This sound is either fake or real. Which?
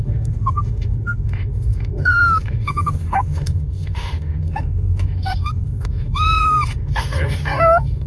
fake